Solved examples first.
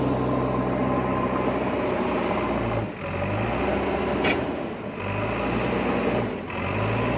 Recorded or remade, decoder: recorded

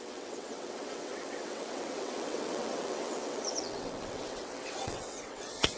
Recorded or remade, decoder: remade, vocoder, WaveNeXt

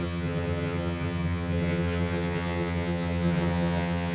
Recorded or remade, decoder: remade, vocoder, HiFi-GAN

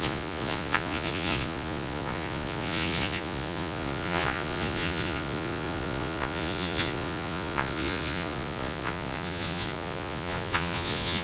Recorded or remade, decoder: remade, vocoder, Vocos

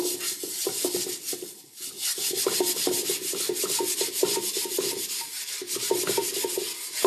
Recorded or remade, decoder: recorded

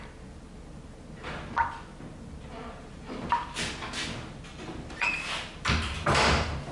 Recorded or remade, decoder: recorded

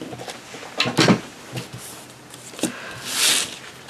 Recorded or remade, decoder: recorded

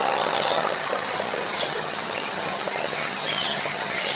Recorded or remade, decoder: remade, vocoder, HiFi-GAN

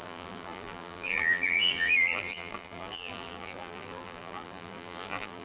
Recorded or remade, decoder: remade, vocoder, BigVGAN v2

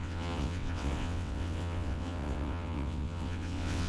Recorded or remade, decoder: remade, vocoder, WaveNeXt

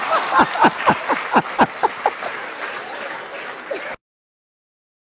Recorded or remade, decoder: recorded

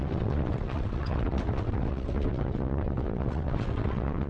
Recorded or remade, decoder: remade, vocoder, WaveNeXt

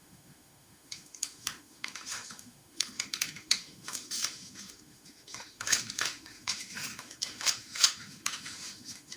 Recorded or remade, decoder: remade, autoencoder, DAC-VAE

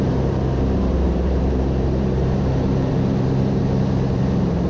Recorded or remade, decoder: remade, vocoder, BigVGAN v2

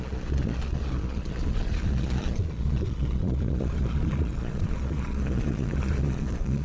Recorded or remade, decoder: remade, vocoder, Vocos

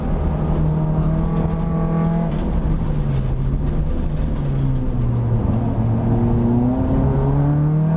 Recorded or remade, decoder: recorded